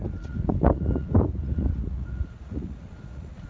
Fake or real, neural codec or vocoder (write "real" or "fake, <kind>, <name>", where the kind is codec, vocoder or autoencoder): fake, vocoder, Vocos